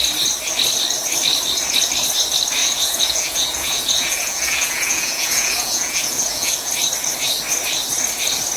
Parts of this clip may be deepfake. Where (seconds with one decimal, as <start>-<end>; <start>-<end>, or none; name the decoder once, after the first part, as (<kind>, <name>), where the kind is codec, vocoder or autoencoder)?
2.6-6.7 (vocoder, Vocos)